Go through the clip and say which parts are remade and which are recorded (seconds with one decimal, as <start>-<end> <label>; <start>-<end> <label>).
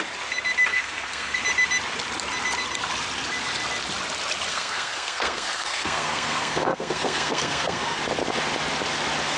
0.0-0.7 recorded; 0.7-1.4 remade; 1.4-4.5 recorded; 4.5-8.0 remade; 8.0-9.4 recorded